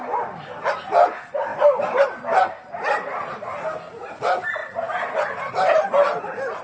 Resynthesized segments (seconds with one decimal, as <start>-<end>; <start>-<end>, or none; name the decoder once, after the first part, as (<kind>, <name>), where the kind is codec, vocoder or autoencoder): none